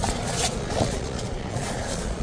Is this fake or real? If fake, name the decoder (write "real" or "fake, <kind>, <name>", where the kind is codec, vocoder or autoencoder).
fake, vocoder, Vocos